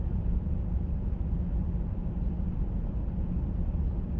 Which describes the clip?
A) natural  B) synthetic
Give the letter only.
A